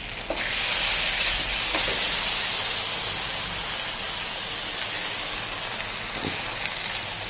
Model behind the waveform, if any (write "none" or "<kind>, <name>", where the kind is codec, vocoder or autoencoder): none